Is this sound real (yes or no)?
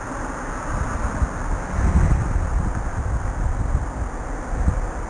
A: yes